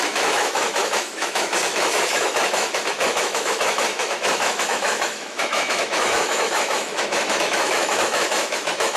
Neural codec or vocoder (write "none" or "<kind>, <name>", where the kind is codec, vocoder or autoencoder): autoencoder, DAC-VAE